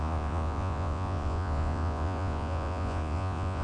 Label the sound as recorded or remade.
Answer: remade